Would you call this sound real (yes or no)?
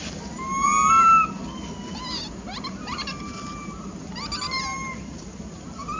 yes